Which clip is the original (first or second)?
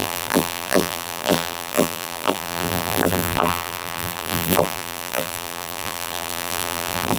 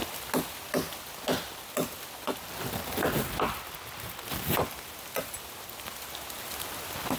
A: second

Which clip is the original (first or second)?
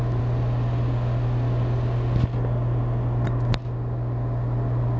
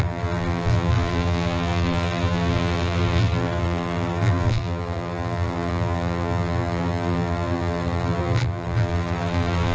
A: first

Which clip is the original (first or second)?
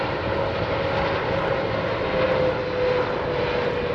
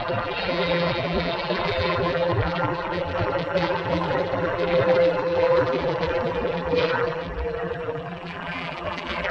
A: first